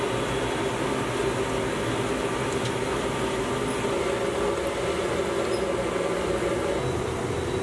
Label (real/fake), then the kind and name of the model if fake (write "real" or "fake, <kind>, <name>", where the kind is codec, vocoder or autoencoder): real